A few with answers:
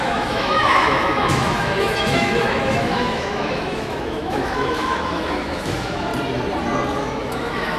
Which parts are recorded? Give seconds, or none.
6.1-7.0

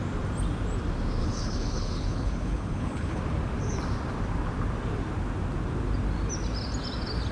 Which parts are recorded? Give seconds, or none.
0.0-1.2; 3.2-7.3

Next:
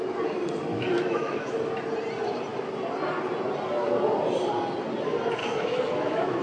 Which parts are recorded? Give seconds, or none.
0.0-0.7; 1.6-5.4

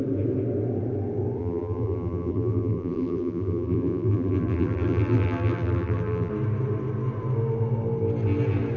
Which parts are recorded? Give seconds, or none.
0.0-1.4; 6.3-8.8